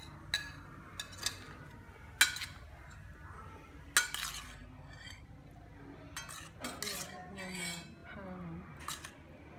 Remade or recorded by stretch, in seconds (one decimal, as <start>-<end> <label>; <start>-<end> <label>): 0.0-9.6 recorded